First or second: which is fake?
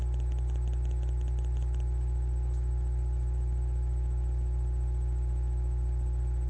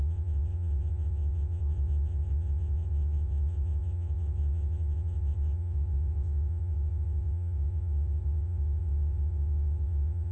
second